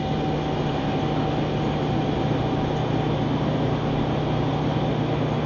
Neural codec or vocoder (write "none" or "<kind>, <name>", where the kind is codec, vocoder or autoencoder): none